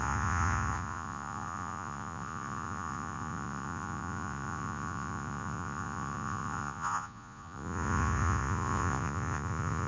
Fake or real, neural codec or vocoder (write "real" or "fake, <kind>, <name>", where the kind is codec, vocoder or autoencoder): fake, vocoder, Vocos